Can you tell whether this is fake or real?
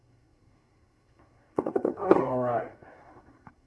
fake